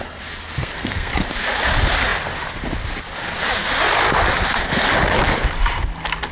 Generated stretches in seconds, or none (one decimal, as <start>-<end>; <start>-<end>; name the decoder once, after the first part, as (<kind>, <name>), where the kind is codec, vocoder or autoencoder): 0.6-1.1 (codec, SNAC)